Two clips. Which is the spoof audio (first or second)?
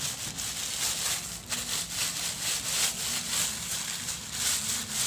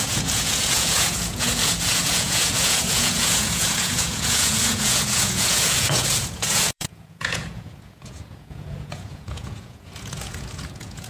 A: second